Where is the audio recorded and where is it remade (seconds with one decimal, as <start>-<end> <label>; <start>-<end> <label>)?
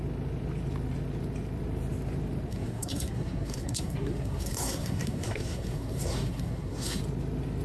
0.0-2.5 recorded; 2.5-7.0 remade; 7.0-7.6 recorded